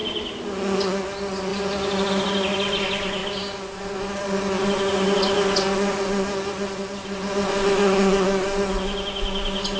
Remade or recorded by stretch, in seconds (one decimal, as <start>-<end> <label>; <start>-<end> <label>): 0.0-9.8 recorded